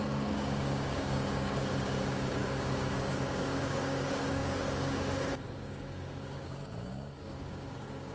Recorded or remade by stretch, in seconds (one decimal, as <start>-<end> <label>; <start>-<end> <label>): 0.0-8.1 remade